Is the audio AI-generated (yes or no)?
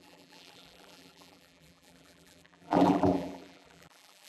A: yes